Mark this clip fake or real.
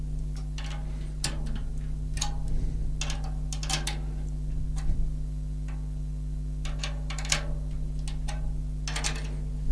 real